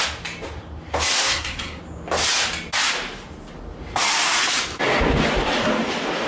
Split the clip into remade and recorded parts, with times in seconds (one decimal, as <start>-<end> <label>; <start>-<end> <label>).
0.0-1.2 recorded; 1.2-1.8 remade; 1.8-6.3 recorded